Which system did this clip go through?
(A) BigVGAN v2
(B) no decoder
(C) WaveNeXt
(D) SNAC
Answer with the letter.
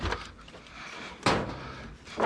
B